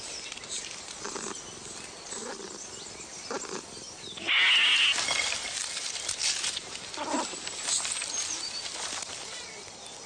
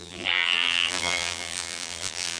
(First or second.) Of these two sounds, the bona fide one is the first